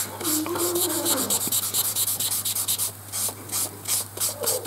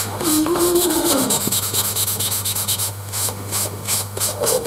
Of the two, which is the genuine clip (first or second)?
first